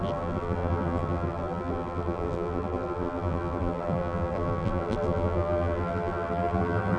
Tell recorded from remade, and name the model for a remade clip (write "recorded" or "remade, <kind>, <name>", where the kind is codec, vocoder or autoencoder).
remade, vocoder, BigVGAN v2